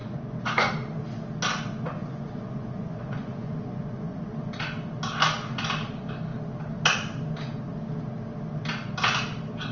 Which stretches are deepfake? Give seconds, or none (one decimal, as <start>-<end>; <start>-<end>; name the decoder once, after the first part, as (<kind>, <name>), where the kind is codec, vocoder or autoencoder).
0.0-0.7 (vocoder, Vocos); 2.0-4.2